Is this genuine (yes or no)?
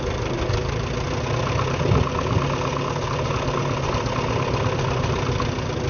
yes